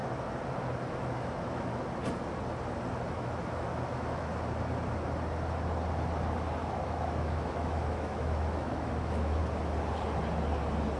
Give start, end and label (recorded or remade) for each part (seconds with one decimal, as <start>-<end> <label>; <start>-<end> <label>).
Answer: 0.0-0.9 recorded; 0.9-1.7 remade; 1.7-3.1 recorded; 3.1-4.3 remade; 4.3-6.7 recorded; 6.7-9.4 remade; 9.4-11.0 recorded